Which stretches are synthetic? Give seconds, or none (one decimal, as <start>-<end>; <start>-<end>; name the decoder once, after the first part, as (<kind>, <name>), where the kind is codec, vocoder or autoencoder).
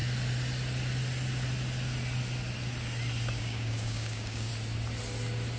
3.4-4.5 (codec, DAC)